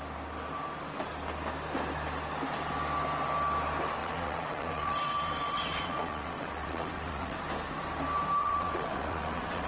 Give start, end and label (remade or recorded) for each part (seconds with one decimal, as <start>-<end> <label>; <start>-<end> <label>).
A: 0.0-4.0 recorded; 4.0-7.4 remade; 7.4-8.4 recorded; 8.4-9.7 remade